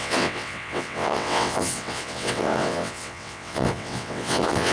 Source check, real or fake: fake